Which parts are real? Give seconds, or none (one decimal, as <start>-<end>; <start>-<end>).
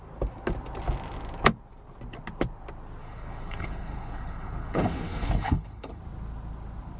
0.0-3.0; 6.0-7.0